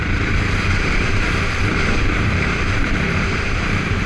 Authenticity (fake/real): fake